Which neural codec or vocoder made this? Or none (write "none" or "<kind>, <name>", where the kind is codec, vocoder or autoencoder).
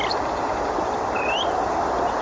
none